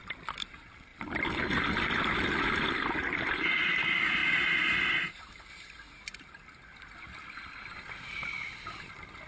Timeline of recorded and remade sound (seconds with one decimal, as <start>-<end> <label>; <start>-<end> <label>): 0.0-4.2 recorded; 4.2-5.7 remade; 5.7-9.3 recorded